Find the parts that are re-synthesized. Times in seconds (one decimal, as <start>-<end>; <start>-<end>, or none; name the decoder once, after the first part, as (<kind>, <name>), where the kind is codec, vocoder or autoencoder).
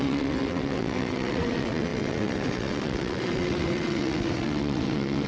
0.0-5.3 (vocoder, WaveNeXt)